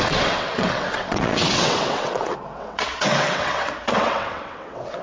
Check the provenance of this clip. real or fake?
fake